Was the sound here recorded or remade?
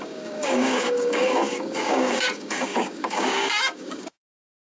remade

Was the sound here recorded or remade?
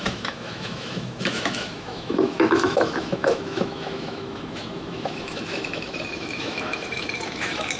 remade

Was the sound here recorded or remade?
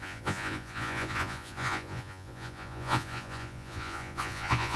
remade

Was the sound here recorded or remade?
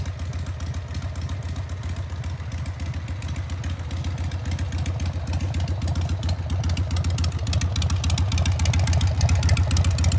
recorded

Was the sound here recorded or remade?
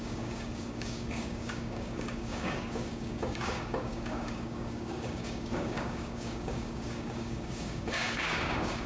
remade